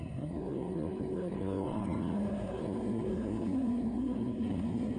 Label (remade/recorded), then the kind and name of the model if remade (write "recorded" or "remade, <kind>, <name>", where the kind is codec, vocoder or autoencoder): remade, codec, SNAC